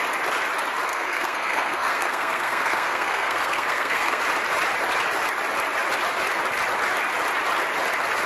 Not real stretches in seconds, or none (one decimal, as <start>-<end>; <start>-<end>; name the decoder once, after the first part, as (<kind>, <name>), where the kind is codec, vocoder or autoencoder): 0.9-4.2 (codec, SNAC)